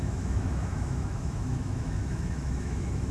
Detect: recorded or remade remade